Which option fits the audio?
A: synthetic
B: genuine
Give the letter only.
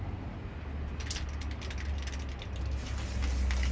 B